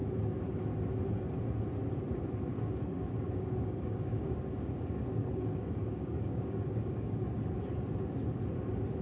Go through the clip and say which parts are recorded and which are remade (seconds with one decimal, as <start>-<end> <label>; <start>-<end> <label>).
0.0-2.5 recorded; 2.5-7.3 remade; 7.3-9.0 recorded